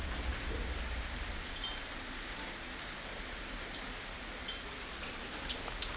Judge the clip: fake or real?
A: real